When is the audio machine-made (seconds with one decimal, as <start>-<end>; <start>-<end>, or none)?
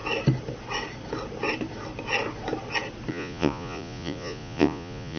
3.1-5.2